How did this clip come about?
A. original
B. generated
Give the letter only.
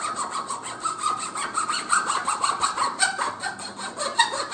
A